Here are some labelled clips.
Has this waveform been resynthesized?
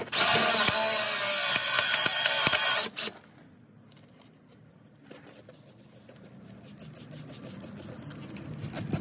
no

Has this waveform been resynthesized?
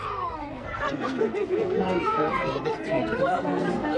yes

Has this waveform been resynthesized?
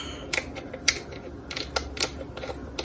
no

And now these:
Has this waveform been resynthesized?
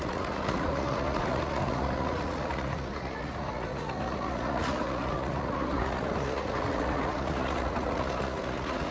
yes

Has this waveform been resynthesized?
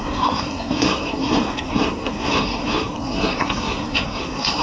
yes